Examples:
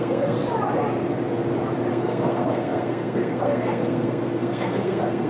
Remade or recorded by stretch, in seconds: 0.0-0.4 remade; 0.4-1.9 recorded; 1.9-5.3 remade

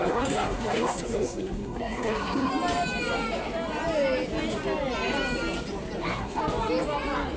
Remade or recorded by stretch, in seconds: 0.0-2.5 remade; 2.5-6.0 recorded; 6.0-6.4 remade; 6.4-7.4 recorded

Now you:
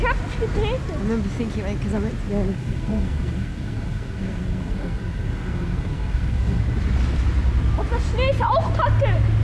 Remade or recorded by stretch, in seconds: 0.0-2.5 recorded; 2.5-6.6 remade; 6.6-9.4 recorded